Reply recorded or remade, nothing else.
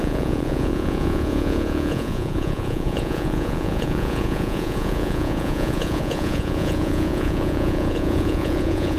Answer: remade